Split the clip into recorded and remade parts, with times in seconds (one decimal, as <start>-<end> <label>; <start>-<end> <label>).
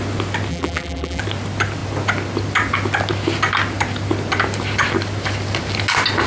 0.0-0.5 recorded; 0.5-1.2 remade; 1.2-6.3 recorded